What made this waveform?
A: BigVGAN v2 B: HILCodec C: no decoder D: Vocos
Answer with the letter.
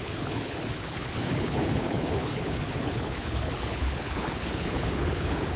B